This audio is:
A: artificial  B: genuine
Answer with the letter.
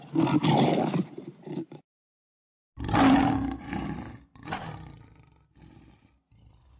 B